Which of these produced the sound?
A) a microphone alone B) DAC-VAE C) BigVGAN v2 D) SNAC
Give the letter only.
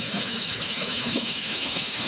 B